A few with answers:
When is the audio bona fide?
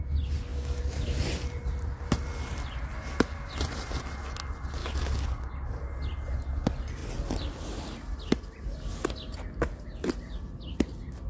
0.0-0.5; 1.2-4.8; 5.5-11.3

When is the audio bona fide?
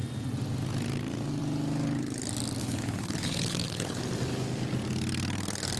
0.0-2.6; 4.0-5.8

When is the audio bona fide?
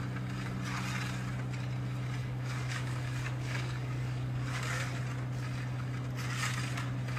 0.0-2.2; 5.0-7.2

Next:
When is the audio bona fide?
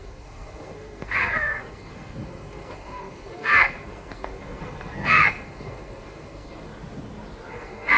6.7-7.5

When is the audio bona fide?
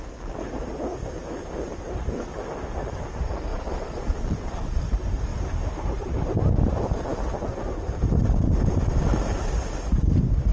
0.0-3.5; 4.8-10.5